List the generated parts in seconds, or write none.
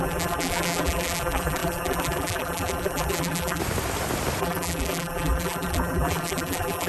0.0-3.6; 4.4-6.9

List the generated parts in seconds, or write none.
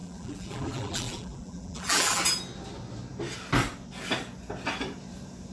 0.0-2.2